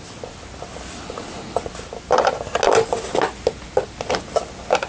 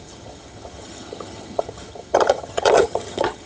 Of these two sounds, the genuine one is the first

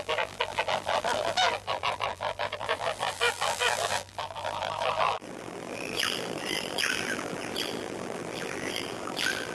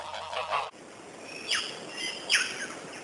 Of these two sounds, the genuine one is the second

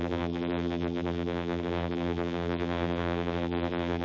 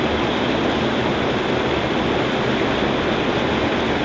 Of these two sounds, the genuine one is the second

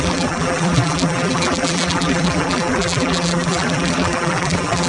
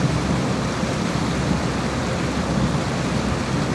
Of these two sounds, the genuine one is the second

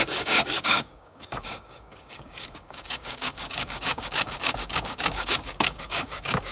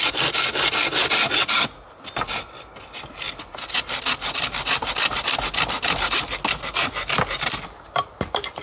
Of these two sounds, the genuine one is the second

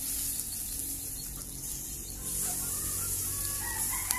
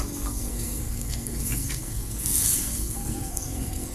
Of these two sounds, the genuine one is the first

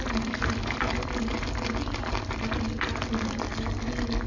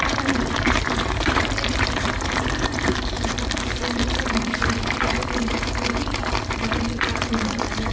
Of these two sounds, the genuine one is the first